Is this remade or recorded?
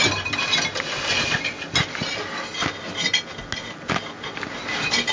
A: recorded